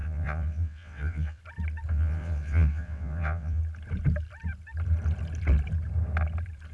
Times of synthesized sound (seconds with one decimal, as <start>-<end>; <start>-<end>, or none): 0.0-1.4; 1.9-3.6